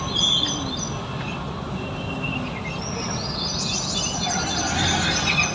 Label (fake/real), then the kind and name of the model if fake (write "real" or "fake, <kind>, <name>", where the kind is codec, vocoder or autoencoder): real